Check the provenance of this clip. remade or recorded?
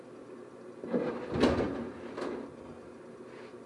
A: recorded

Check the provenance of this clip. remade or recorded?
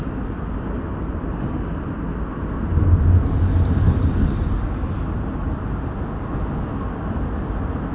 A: recorded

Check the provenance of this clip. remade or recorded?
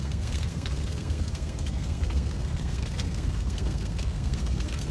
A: remade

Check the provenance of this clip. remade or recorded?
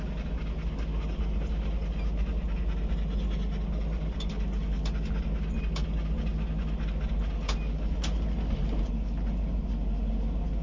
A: recorded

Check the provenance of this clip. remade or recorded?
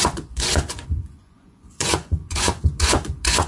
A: remade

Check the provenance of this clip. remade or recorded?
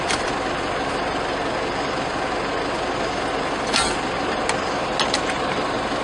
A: recorded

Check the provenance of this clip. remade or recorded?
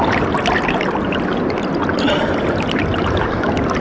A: recorded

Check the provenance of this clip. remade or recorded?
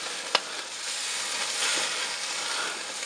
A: recorded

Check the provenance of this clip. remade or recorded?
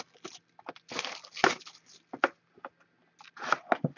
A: recorded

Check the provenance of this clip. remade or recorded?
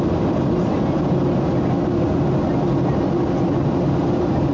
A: recorded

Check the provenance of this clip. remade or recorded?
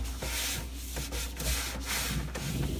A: recorded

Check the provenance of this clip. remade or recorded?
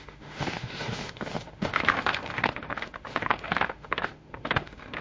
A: remade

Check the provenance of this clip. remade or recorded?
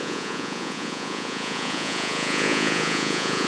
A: remade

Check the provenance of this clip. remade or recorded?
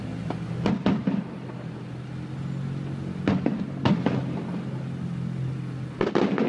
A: recorded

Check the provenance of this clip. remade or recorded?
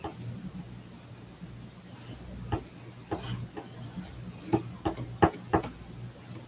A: recorded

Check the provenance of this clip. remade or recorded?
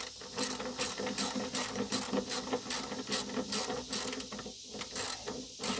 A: recorded